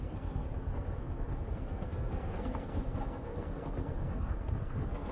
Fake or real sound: fake